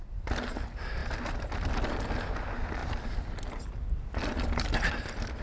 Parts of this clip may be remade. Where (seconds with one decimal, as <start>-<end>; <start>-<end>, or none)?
1.0-2.0; 2.8-4.9